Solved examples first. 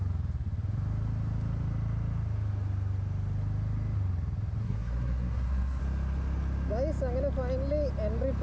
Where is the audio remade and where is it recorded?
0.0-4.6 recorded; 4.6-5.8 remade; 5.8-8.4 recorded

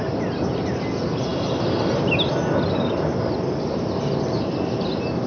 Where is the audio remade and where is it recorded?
0.0-5.3 recorded

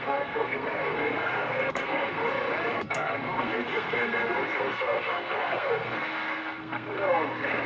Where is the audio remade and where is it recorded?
0.0-2.2 remade; 2.2-2.7 recorded; 2.7-7.7 remade

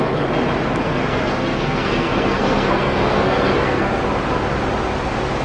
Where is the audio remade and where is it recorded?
0.0-0.8 recorded; 0.8-4.0 remade; 4.0-5.4 recorded

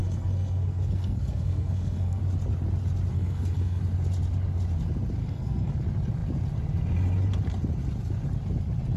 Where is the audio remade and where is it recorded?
0.0-2.2 remade; 2.2-3.1 recorded; 3.1-3.8 remade; 3.8-5.2 recorded; 5.2-5.7 remade; 5.7-9.0 recorded